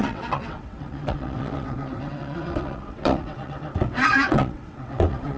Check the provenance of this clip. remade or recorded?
remade